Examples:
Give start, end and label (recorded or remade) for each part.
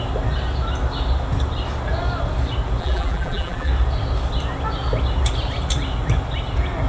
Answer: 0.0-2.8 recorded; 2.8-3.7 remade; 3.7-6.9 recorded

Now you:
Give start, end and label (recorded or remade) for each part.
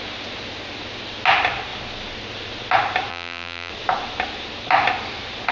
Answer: 0.0-3.1 recorded; 3.1-3.7 remade; 3.7-5.5 recorded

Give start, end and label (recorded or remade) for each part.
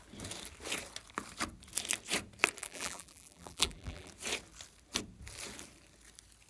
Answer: 0.0-2.6 recorded; 2.6-4.1 remade; 4.1-6.5 recorded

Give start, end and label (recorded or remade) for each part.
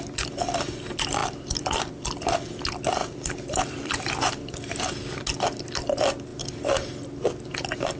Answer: 0.0-1.2 recorded; 1.2-2.2 remade; 2.2-3.0 recorded; 3.0-4.9 remade; 4.9-8.0 recorded